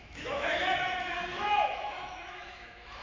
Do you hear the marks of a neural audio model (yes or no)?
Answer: yes